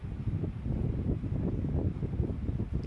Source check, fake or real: real